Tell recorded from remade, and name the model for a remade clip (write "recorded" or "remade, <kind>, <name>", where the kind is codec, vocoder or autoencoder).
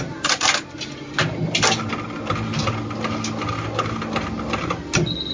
recorded